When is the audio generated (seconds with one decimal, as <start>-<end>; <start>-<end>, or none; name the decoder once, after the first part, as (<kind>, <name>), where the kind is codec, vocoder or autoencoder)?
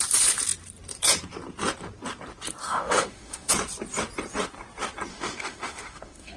2.6-3.5 (autoencoder, DAC-VAE); 5.1-6.4